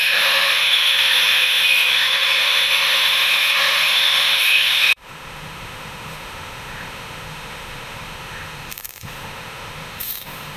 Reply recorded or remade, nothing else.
remade